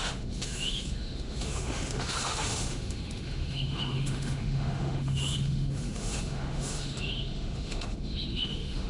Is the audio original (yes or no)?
no